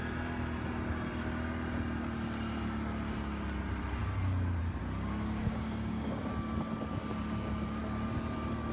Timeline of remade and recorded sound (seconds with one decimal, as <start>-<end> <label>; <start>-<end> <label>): 0.0-5.4 recorded; 5.4-6.2 remade; 6.2-8.7 recorded